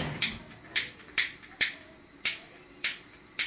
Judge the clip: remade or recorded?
recorded